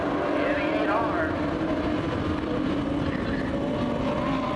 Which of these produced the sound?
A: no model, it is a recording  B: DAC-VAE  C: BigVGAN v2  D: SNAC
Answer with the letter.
C